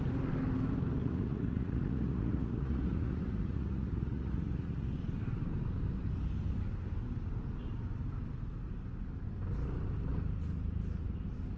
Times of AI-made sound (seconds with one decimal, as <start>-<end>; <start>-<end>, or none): 1.0-4.9